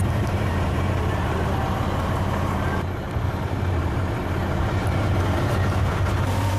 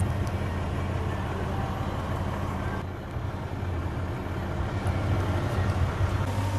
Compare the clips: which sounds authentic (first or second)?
second